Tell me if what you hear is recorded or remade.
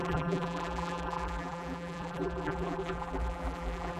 remade